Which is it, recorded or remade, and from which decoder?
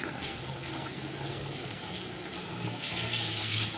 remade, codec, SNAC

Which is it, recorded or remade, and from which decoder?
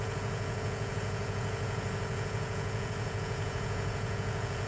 remade, vocoder, Vocos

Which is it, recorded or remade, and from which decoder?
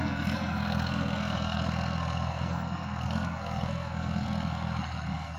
remade, codec, SNAC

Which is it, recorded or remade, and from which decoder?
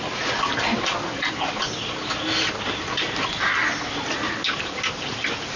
recorded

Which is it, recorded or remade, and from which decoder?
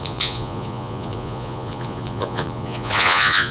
remade, vocoder, Vocos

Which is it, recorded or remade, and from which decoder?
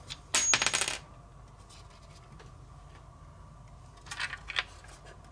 recorded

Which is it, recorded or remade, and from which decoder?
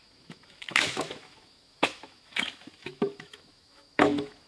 remade, autoencoder, DAC-VAE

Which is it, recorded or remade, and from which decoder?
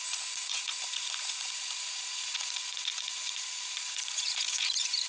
remade, vocoder, Vocos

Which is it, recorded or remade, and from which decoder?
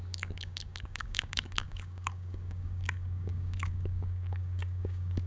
remade, codec, DAC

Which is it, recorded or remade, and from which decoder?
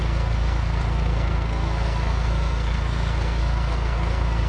remade, codec, SNAC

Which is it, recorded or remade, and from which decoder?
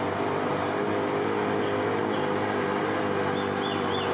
recorded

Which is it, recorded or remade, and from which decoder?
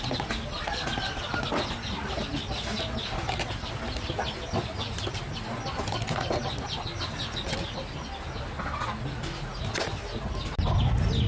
recorded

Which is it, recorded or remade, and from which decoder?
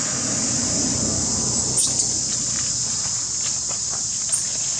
recorded